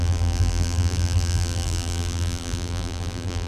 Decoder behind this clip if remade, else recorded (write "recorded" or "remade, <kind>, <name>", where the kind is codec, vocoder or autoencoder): remade, vocoder, BigVGAN v2